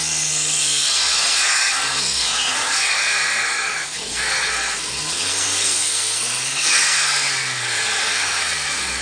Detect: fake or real fake